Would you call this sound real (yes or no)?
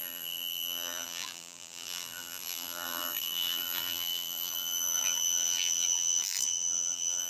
no